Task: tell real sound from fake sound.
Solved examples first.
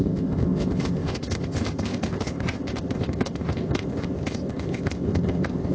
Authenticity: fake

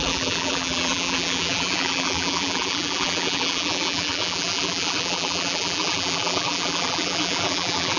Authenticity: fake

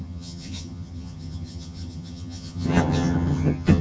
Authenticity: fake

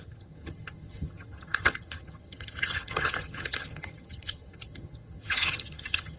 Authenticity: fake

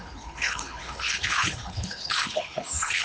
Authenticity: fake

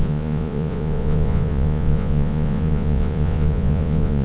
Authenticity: fake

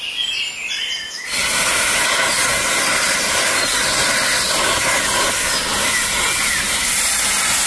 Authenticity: real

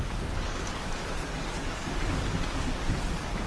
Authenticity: fake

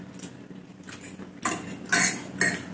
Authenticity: real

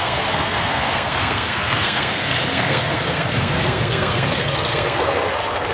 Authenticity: fake